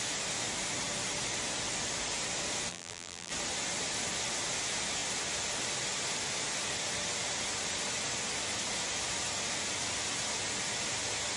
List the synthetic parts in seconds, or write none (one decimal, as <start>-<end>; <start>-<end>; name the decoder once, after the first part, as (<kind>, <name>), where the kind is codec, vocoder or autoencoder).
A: 2.7-3.3 (vocoder, BigVGAN v2)